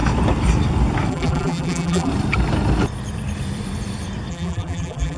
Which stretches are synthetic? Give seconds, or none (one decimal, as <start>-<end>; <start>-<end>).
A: 1.1-2.1; 4.3-5.2